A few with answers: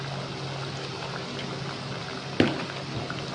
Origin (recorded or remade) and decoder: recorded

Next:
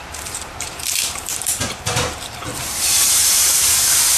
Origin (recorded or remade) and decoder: remade, vocoder, BigVGAN v2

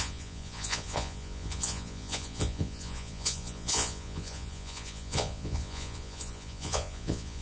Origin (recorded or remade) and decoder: remade, vocoder, Vocos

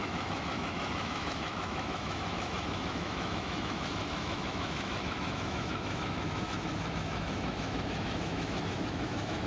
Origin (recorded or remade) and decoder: remade, autoencoder, DAC-VAE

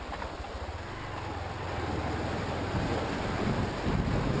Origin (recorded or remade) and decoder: recorded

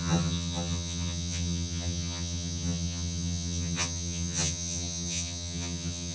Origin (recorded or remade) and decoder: remade, vocoder, HiFi-GAN